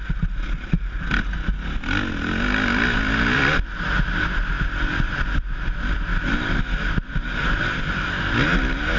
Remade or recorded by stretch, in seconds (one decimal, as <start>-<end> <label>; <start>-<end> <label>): 0.0-9.0 recorded